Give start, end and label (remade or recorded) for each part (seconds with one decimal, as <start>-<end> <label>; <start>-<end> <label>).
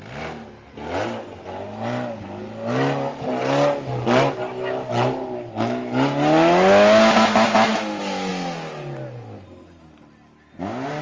0.0-11.0 recorded